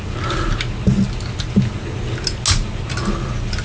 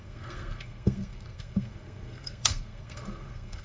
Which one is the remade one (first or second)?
second